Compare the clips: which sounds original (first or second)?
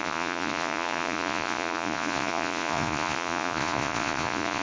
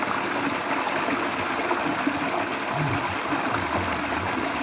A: second